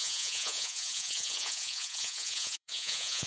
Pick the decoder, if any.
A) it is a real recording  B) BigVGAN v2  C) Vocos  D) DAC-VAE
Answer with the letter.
C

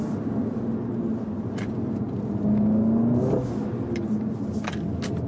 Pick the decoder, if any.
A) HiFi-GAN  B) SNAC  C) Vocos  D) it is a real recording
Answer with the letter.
D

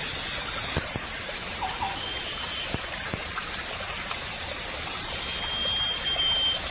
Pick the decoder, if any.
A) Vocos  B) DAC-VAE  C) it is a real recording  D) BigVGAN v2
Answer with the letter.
C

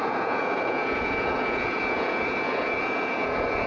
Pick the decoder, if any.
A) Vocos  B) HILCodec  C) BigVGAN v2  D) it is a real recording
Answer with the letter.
A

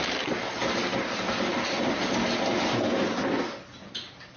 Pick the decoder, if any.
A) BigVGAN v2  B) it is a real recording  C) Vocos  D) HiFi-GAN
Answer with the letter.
B